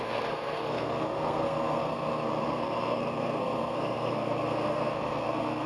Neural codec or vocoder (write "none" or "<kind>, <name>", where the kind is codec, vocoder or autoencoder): codec, SNAC